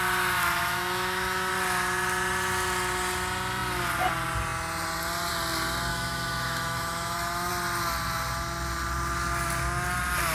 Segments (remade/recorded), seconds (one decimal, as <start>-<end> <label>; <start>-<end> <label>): 0.0-0.6 recorded; 0.6-1.5 remade; 1.5-5.9 recorded; 5.9-7.5 remade; 7.5-10.3 recorded

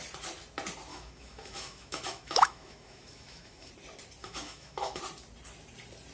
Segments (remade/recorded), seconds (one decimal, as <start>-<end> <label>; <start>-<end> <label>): 0.0-0.9 recorded; 0.9-3.7 remade; 3.7-4.2 recorded; 4.2-5.0 remade; 5.0-6.1 recorded

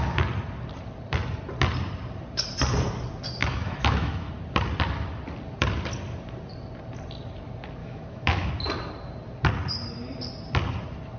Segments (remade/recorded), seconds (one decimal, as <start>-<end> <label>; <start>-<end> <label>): 0.0-3.4 recorded; 3.4-4.3 remade; 4.3-7.8 recorded; 7.8-8.5 remade; 8.5-11.2 recorded

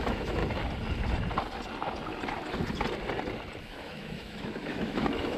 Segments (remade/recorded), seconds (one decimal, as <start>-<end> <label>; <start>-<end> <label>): 0.0-0.4 remade; 0.4-3.6 recorded; 3.6-5.4 remade

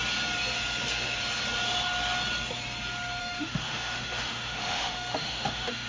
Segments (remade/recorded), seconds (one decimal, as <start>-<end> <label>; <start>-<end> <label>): 0.0-3.2 recorded; 3.2-5.9 remade

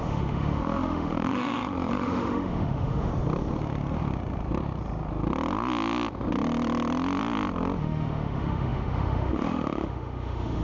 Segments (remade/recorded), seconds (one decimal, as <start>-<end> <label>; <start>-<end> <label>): 0.0-3.1 remade; 3.1-7.8 recorded; 7.8-10.6 remade